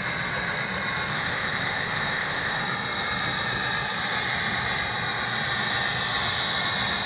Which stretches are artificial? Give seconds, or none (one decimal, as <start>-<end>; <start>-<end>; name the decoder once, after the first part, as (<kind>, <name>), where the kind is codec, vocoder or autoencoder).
1.1-2.6 (codec, ZipCodec)